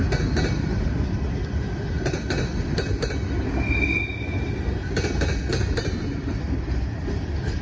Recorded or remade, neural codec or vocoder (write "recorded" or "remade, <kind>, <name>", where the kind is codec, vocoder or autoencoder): recorded